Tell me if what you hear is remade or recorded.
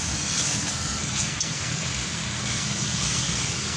remade